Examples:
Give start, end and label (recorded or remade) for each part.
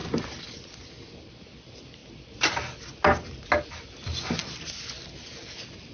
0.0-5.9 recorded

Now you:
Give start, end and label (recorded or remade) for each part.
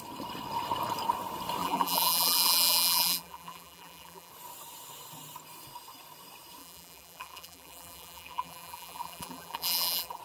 0.0-1.6 recorded; 1.6-4.3 remade; 4.3-6.6 recorded; 6.6-10.2 remade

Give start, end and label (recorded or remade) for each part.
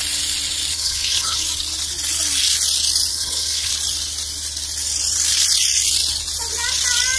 0.0-0.7 recorded; 0.7-1.4 remade; 1.4-3.1 recorded; 3.1-3.7 remade; 3.7-7.2 recorded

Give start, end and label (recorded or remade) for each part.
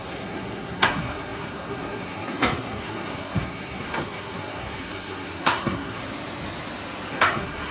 0.0-6.0 remade; 6.0-7.1 recorded; 7.1-7.7 remade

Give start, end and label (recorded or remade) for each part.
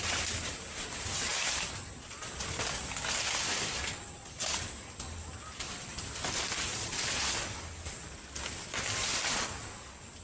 0.0-6.7 recorded; 6.7-7.3 remade; 7.3-10.2 recorded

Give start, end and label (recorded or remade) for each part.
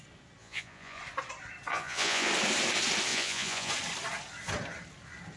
0.0-0.4 recorded; 0.4-1.0 remade; 1.0-1.7 recorded; 1.7-2.3 remade; 2.3-3.1 recorded; 3.1-3.7 remade; 3.7-5.4 recorded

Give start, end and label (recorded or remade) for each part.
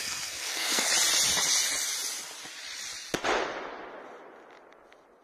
0.0-0.9 remade; 0.9-5.2 recorded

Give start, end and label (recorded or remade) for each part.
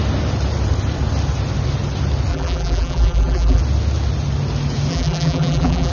0.0-2.3 recorded; 2.3-3.6 remade; 3.6-4.9 recorded; 4.9-5.9 remade